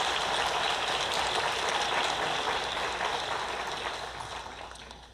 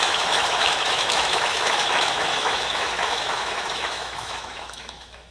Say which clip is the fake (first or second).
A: second